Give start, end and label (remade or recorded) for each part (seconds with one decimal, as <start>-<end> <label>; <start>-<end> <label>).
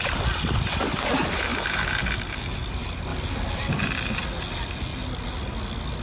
0.0-6.0 recorded